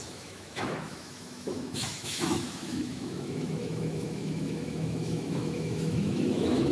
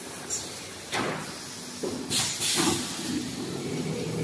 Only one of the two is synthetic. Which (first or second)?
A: first